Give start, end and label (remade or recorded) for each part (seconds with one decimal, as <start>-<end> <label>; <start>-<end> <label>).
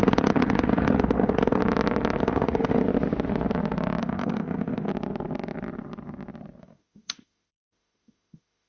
0.0-1.6 remade; 1.6-2.2 recorded; 2.2-2.8 remade; 2.8-4.0 recorded; 4.0-4.9 remade; 4.9-6.6 recorded; 6.6-8.7 remade